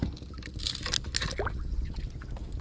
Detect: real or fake real